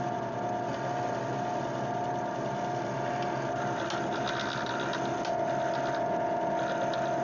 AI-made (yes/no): no